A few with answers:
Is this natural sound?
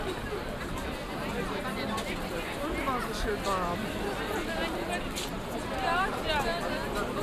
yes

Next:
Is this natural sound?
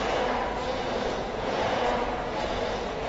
no